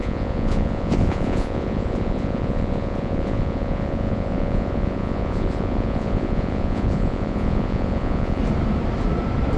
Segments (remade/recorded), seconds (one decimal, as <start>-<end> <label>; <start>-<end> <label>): 0.0-8.4 remade; 8.4-9.6 recorded